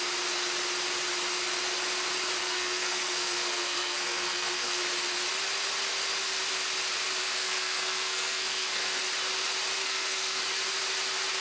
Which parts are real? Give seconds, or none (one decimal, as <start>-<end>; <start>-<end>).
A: 0.0-2.4; 4.8-7.2; 9.0-9.8; 10.4-11.4